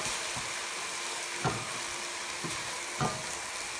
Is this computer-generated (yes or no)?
no